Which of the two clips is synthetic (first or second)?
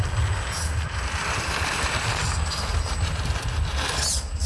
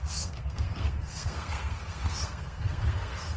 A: second